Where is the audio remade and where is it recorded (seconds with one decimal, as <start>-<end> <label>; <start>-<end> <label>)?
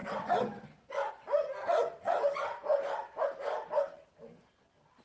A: 0.0-5.0 recorded